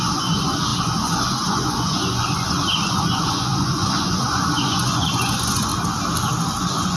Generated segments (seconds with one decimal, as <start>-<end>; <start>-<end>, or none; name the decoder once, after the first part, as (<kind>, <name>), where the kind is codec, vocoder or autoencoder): 0.0-5.7 (vocoder, Vocos); 6.6-7.0